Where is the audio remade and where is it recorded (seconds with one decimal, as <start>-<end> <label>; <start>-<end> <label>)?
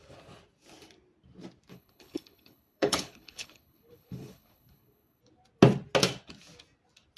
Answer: 0.0-1.7 recorded; 1.7-5.2 remade; 5.2-7.2 recorded